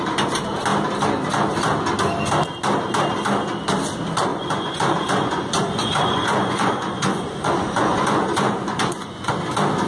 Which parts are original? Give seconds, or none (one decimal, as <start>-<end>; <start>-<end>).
0.0-4.3; 9.3-9.9